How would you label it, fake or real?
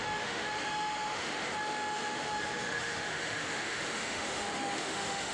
fake